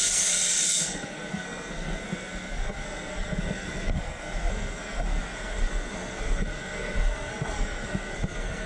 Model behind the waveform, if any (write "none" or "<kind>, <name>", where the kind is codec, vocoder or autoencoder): codec, SNAC